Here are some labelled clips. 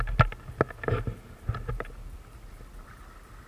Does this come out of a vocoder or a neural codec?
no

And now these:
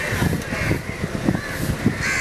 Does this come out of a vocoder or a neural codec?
no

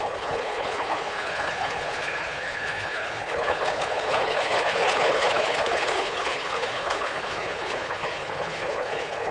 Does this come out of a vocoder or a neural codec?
yes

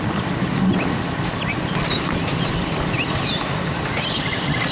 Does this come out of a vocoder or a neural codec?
no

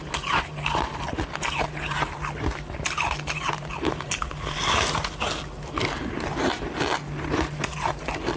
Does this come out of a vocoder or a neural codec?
no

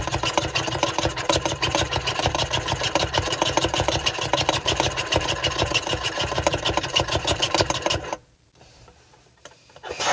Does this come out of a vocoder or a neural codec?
yes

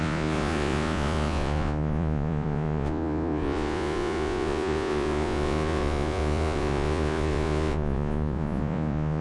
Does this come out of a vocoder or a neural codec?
yes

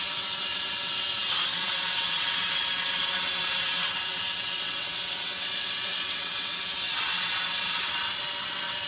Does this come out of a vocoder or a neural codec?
yes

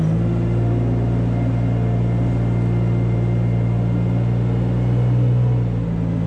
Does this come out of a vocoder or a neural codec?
no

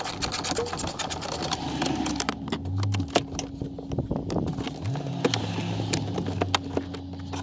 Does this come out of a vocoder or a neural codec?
no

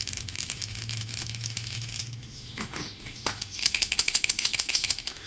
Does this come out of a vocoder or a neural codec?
yes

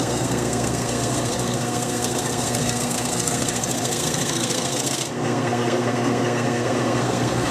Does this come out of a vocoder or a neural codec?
yes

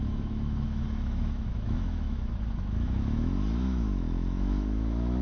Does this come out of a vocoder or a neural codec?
yes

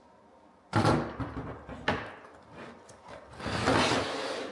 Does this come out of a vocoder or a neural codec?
no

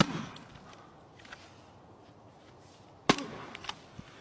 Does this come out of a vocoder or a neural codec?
no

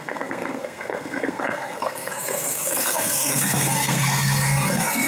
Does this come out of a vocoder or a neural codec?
yes